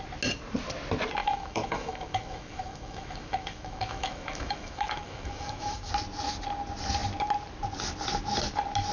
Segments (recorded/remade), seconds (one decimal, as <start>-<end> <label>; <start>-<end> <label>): 0.0-1.2 recorded; 1.2-5.9 remade; 5.9-8.9 recorded